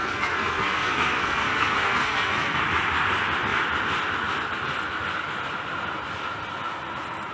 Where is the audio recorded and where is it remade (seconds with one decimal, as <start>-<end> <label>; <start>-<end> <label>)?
0.0-2.6 remade; 2.6-7.3 recorded